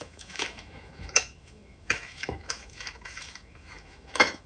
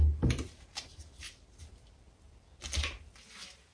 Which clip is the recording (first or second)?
second